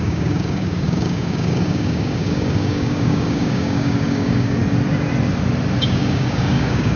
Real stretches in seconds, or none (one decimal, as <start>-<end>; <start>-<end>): 4.6-5.8